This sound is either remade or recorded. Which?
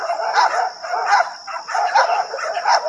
recorded